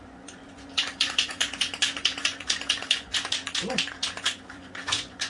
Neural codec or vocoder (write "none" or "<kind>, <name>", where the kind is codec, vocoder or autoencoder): vocoder, Vocos